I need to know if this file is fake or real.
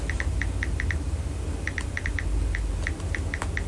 real